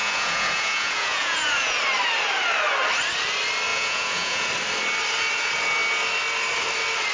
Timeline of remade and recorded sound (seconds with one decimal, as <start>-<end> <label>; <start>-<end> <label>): 0.0-1.8 remade; 1.8-3.7 recorded; 3.7-4.5 remade; 4.5-7.1 recorded